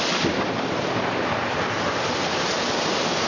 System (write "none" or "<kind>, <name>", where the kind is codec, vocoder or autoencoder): none